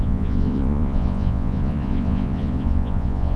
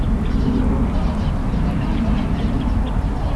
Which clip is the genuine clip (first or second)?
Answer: second